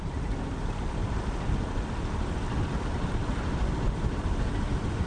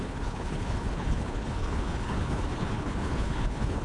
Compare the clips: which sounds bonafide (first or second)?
first